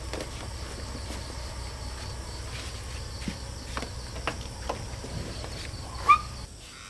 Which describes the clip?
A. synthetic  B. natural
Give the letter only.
B